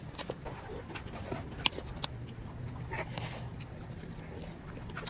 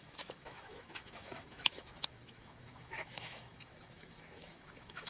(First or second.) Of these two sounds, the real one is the first